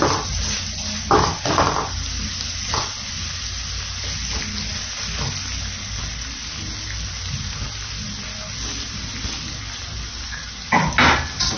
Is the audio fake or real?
real